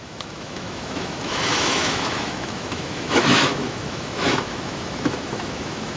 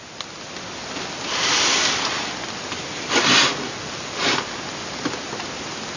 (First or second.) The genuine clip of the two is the second